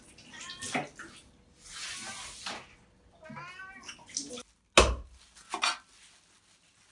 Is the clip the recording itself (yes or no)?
yes